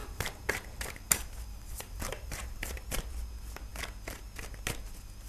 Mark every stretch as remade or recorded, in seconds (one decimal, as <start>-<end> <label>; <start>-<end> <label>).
0.0-3.1 remade; 3.1-5.3 recorded